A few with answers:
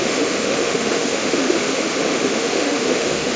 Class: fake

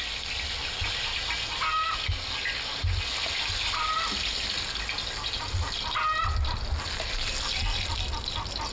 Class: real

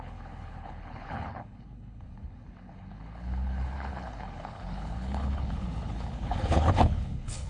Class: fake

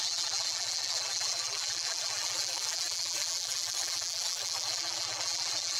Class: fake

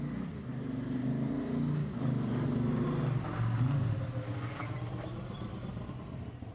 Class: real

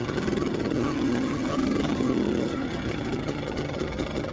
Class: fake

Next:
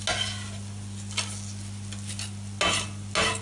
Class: real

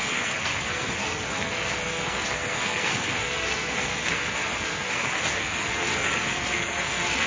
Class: fake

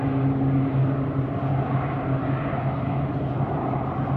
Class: real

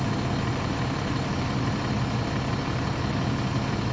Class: real